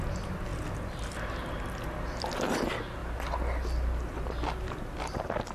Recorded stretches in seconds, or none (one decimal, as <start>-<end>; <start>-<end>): 0.0-5.5

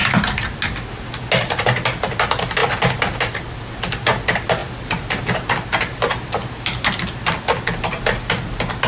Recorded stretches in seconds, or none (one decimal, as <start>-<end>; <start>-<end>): 0.0-8.9

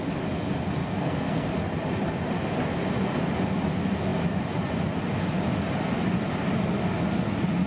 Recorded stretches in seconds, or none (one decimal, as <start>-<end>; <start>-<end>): 0.0-0.8; 1.5-7.7

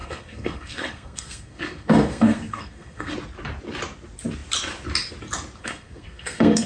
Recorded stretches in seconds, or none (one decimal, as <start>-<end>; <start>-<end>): 3.1-5.6

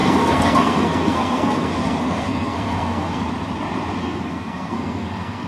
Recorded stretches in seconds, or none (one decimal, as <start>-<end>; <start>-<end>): 3.3-4.0

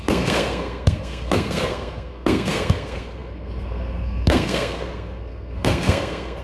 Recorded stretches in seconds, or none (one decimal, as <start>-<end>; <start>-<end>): none

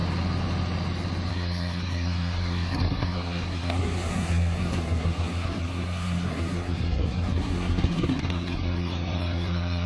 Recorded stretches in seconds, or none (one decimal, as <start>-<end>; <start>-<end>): 0.0-1.3

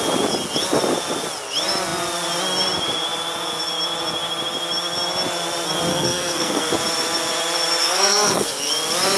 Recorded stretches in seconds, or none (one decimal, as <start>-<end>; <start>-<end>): 0.0-5.9; 6.7-7.8; 8.7-9.2